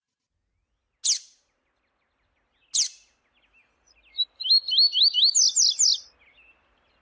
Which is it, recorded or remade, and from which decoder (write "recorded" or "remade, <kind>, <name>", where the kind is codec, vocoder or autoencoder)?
recorded